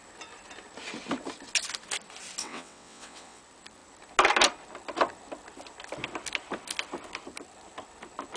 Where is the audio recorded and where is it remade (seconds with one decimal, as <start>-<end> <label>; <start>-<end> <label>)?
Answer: 0.0-2.4 recorded; 2.4-3.4 remade; 3.4-8.4 recorded